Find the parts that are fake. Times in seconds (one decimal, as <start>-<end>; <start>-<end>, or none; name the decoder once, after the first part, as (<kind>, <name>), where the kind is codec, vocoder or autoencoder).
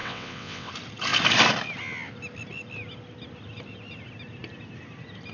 0.0-0.7 (vocoder, WaveNeXt)